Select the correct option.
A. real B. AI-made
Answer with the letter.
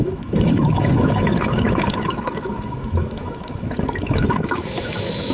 B